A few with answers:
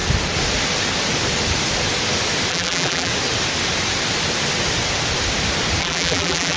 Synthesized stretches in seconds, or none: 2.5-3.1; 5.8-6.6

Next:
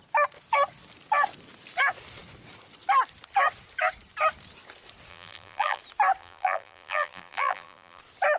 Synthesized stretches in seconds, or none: 5.1-5.8; 6.2-8.0

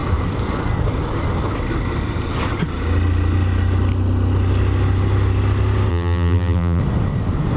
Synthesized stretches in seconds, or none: 5.9-6.8

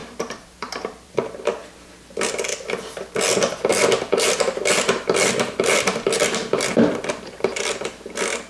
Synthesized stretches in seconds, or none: 0.0-1.1; 3.7-7.9

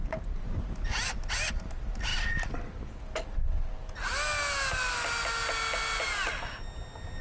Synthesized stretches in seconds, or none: none

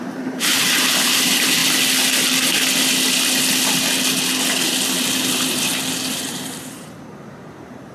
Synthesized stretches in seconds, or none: 0.0-1.6; 6.3-7.9

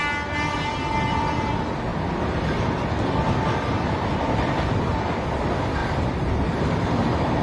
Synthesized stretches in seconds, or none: 5.8-6.6

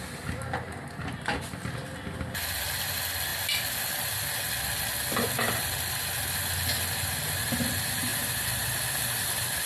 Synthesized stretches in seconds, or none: none